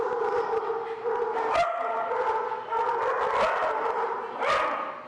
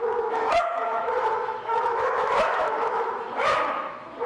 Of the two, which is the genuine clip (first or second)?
first